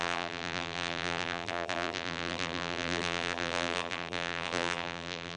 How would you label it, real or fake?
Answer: fake